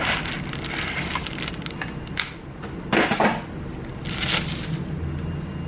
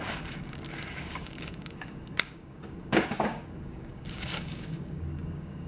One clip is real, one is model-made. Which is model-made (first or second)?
second